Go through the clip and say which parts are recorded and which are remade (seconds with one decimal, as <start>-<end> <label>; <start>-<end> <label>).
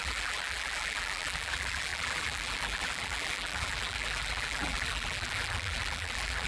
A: 0.0-6.5 remade